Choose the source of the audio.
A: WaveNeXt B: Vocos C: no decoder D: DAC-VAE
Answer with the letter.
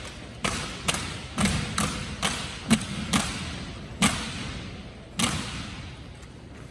C